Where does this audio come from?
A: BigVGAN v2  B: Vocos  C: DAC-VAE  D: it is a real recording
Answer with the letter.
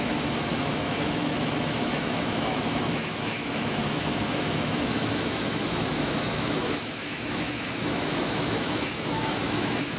C